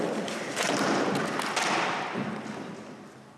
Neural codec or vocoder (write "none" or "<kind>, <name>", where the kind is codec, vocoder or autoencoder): none